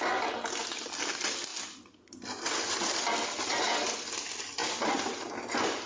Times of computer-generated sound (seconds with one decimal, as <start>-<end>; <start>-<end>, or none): none